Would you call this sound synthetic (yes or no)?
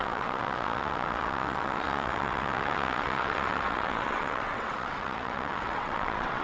yes